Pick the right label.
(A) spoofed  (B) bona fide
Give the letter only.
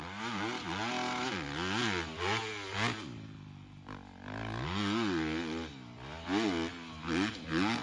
B